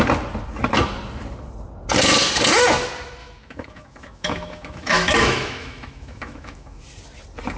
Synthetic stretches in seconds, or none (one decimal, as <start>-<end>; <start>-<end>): 3.2-6.8

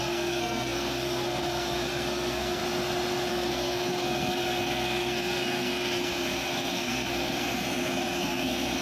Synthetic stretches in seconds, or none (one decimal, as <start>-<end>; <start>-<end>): 0.0-2.6; 3.3-8.8

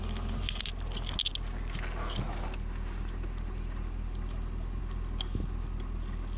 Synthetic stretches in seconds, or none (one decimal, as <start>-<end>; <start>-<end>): none

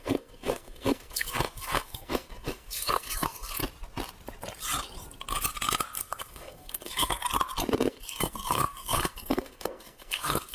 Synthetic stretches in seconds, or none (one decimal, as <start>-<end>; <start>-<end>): 0.0-3.6; 6.0-7.2; 7.9-10.5